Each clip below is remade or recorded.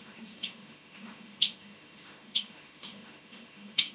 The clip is remade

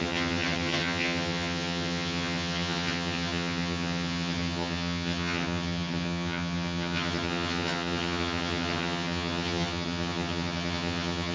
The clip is remade